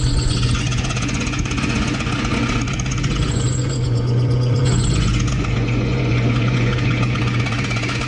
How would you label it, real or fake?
fake